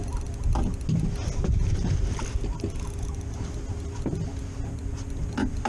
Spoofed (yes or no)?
no